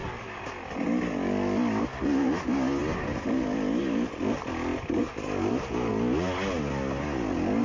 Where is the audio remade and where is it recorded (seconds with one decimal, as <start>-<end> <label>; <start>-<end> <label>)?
0.0-7.6 recorded

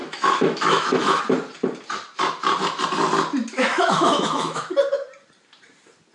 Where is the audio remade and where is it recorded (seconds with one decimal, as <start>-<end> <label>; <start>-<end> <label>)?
0.0-1.2 remade; 1.2-3.5 recorded; 3.5-4.7 remade; 4.7-6.1 recorded

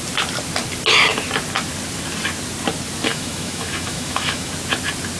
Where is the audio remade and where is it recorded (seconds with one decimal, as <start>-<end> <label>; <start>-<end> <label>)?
0.0-3.1 recorded; 3.1-4.5 remade; 4.5-5.2 recorded

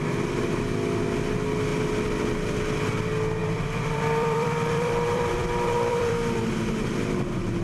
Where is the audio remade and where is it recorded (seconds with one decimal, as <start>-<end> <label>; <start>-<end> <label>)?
0.0-3.4 recorded; 3.4-6.4 remade; 6.4-7.6 recorded